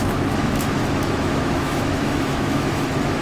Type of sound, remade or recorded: remade